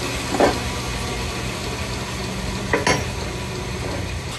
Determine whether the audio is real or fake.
real